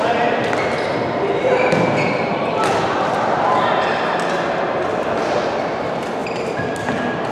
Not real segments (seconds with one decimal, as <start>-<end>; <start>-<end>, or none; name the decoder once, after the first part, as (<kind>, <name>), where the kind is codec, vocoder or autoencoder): none

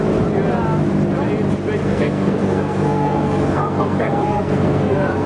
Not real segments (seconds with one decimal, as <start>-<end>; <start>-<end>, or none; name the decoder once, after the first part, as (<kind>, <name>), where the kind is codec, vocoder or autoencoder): 1.8-5.3 (codec, SNAC)

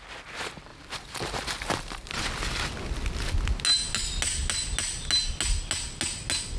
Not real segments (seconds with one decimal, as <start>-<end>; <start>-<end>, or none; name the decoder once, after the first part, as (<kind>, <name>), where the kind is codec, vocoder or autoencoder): 0.7-2.2 (vocoder, BigVGAN v2)